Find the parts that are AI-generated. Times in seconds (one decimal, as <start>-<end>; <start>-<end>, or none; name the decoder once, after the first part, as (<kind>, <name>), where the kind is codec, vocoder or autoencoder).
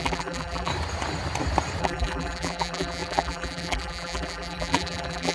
0.0-0.7 (vocoder, BigVGAN v2); 1.8-5.3